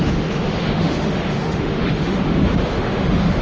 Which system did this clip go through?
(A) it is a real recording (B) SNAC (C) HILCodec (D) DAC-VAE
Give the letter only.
D